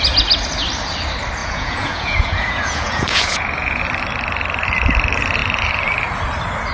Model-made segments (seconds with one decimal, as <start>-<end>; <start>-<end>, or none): 1.4-3.8